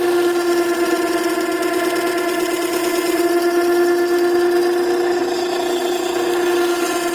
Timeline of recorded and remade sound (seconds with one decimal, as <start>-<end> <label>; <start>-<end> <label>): 0.0-7.1 recorded

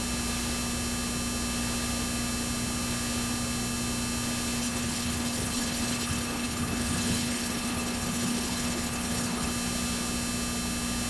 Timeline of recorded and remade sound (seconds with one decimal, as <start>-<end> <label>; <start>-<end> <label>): 0.0-4.6 recorded; 4.6-9.5 remade; 9.5-11.1 recorded

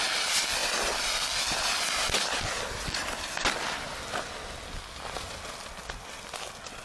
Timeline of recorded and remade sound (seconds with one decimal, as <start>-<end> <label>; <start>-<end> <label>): 0.0-6.8 recorded

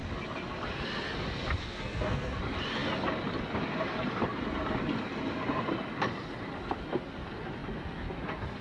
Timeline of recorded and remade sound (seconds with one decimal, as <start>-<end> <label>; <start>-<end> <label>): 0.0-1.6 recorded; 1.6-2.4 remade; 2.4-8.6 recorded